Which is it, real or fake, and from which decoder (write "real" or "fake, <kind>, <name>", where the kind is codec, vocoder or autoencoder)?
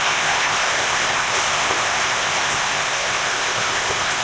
fake, codec, ZipCodec